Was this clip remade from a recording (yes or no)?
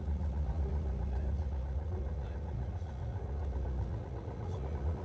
yes